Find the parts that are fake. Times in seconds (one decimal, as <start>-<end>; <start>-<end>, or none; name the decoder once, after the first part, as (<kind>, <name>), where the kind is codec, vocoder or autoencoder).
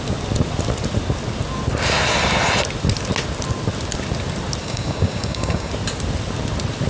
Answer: 4.6-5.7 (codec, DAC)